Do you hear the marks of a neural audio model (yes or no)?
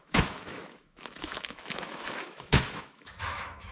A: yes